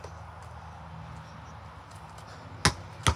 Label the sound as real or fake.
real